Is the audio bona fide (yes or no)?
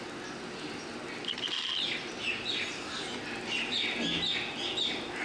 yes